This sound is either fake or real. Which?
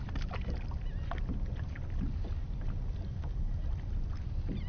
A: real